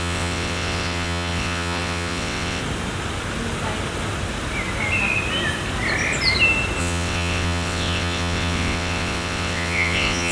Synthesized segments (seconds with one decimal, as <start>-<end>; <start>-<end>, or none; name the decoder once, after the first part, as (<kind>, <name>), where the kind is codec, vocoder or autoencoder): 0.0-2.6 (vocoder, WaveNeXt); 6.8-10.3

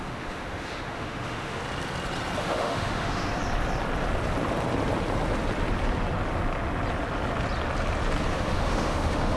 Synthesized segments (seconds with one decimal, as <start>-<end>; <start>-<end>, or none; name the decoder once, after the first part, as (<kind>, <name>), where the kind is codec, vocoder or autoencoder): 0.0-1.6 (autoencoder, DAC-VAE); 2.4-3.4; 8.3-9.4

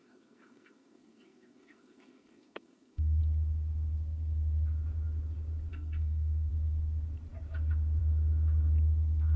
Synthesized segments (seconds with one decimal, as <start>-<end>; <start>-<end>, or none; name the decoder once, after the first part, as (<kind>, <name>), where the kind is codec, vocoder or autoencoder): 0.0-3.2 (codec, SNAC); 5.7-6.5